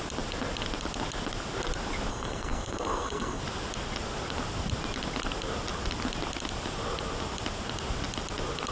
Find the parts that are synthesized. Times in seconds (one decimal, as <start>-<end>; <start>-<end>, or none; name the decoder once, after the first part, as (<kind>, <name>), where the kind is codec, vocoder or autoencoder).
2.1-3.4 (codec, SNAC)